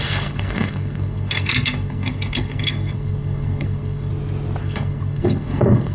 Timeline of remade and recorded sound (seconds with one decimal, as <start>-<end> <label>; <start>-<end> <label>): 0.0-4.1 remade; 4.1-4.6 recorded; 4.6-5.9 remade